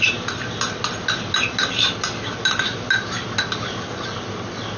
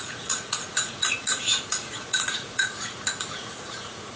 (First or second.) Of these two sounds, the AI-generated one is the second